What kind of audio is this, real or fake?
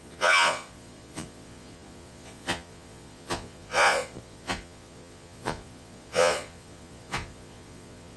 fake